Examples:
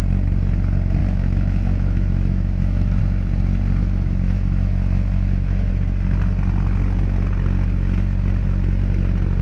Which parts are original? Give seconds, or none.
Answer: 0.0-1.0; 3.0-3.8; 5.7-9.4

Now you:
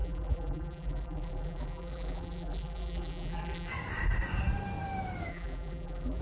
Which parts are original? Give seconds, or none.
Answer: 3.7-5.3

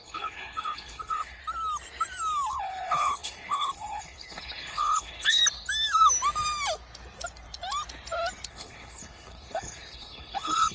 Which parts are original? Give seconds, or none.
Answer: 1.4-2.5; 5.4-8.5

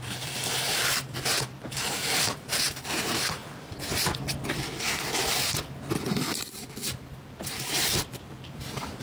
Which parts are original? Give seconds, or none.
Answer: 3.4-7.2

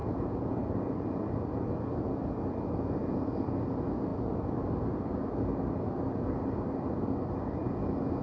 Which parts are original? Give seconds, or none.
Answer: 0.0-8.2

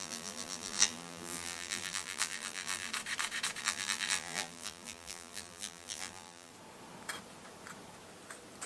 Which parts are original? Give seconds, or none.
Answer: 2.9-3.6; 6.5-8.7